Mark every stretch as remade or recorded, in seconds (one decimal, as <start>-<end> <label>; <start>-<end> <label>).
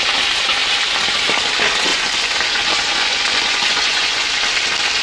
0.0-1.9 recorded; 1.9-4.4 remade; 4.4-5.0 recorded